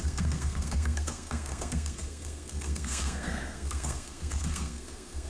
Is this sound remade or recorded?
remade